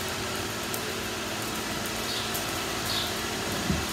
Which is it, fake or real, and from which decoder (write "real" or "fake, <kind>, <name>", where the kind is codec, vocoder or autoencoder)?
fake, vocoder, BigVGAN v2